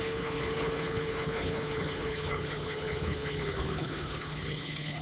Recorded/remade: remade